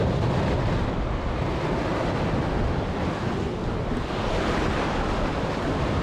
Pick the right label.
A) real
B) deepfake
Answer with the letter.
A